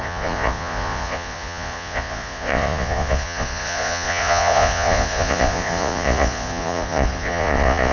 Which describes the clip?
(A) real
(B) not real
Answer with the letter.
B